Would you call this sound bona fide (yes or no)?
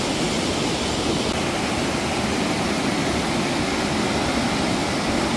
yes